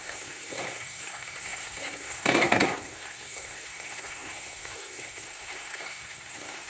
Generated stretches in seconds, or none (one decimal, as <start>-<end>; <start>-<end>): 0.0-6.7